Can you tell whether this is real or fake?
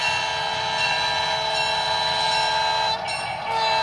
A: real